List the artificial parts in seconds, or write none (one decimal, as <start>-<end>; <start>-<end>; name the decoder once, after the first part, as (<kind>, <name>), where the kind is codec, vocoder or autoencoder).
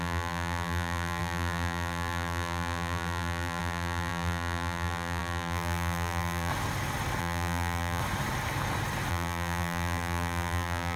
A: 0.0-6.5 (vocoder, BigVGAN v2); 7.2-8.0; 9.1-11.0